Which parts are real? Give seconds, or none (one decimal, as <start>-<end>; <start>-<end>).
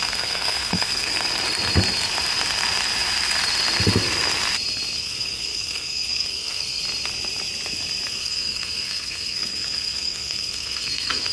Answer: 1.1-5.0; 6.8-8.1